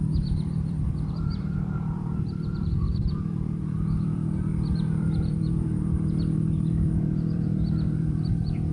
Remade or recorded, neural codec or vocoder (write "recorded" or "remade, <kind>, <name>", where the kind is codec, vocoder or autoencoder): remade, vocoder, BigVGAN v2